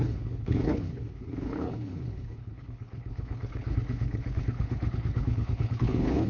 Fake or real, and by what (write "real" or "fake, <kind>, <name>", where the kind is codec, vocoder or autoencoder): fake, codec, HILCodec